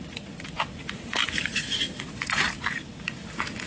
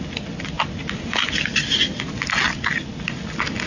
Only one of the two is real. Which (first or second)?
second